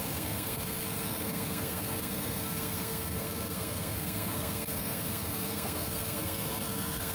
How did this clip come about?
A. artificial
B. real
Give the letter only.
A